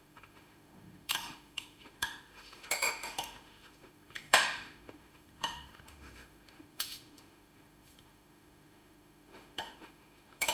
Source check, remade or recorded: remade